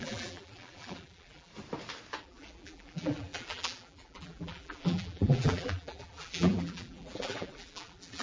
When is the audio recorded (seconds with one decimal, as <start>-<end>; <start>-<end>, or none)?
1.5-2.2